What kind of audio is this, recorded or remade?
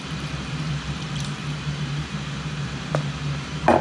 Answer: remade